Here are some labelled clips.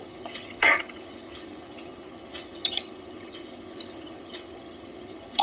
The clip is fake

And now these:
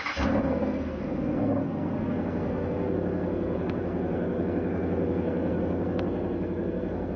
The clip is fake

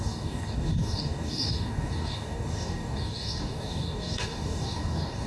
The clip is fake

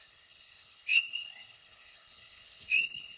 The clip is fake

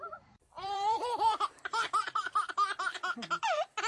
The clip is fake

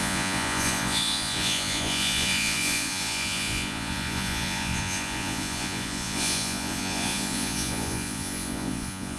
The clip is fake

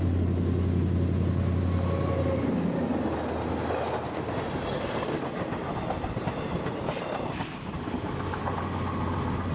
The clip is real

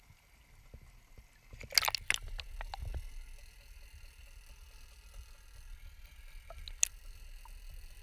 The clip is real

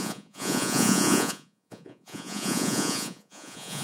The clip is fake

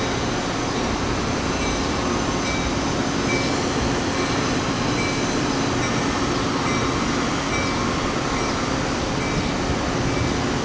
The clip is real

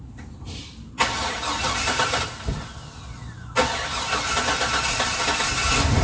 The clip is real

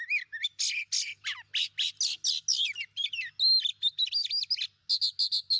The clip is real